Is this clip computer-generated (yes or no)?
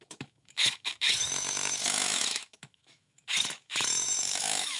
yes